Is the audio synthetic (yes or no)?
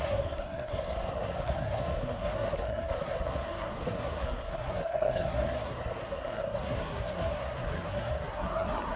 yes